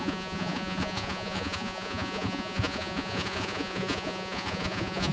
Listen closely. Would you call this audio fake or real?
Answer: fake